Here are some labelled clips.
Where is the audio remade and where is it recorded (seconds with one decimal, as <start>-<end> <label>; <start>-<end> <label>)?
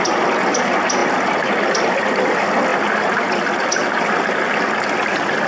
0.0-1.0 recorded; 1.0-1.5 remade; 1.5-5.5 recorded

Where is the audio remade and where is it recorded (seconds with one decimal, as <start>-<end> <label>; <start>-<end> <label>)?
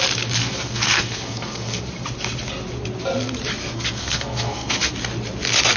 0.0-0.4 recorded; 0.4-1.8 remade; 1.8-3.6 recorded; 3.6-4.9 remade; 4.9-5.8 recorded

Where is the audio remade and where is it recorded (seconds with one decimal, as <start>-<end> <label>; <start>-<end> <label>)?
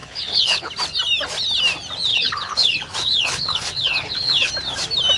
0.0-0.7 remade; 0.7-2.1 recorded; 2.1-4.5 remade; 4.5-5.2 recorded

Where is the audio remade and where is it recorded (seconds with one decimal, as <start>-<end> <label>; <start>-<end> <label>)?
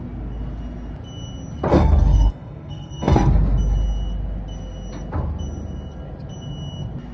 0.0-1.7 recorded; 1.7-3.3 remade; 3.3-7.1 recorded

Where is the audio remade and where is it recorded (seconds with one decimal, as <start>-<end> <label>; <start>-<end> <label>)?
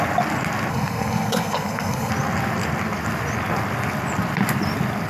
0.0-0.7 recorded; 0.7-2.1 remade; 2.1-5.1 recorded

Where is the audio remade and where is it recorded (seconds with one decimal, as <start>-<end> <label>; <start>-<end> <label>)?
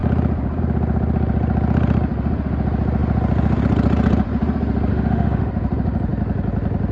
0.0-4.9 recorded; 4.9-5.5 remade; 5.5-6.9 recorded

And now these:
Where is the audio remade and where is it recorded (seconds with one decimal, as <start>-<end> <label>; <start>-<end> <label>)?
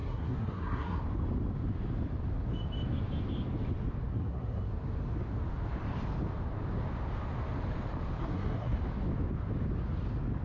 0.0-1.0 remade; 1.0-4.1 recorded; 4.1-4.7 remade; 4.7-8.2 recorded; 8.2-8.8 remade; 8.8-10.4 recorded